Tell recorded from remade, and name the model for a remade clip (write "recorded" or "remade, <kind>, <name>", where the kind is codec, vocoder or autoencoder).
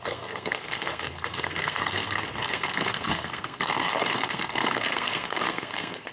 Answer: remade, codec, SNAC